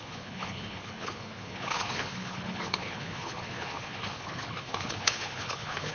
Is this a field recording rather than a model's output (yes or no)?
no